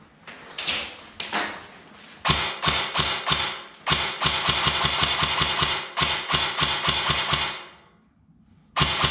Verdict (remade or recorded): recorded